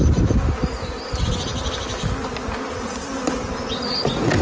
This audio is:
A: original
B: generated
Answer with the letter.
A